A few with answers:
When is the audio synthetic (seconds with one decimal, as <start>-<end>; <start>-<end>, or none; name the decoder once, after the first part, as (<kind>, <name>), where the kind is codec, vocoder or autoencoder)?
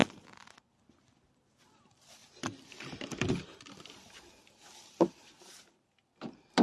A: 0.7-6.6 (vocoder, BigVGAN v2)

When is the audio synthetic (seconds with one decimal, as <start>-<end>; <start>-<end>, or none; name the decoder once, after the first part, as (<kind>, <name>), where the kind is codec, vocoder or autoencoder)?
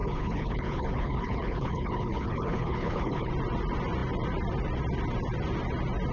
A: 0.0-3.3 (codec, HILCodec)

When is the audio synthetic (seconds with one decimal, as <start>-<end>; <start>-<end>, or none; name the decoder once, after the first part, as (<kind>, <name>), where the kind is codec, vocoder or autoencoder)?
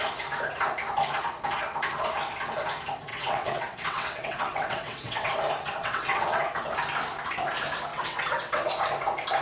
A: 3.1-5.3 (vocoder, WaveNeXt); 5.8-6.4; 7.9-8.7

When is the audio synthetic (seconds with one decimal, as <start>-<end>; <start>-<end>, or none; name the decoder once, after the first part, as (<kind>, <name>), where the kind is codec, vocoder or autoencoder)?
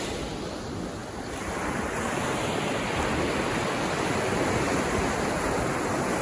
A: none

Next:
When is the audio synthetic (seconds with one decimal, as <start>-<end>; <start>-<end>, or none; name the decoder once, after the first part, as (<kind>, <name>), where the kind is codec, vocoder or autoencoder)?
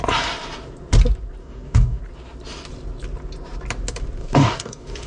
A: 1.4-2.0 (codec, DAC); 4.2-5.1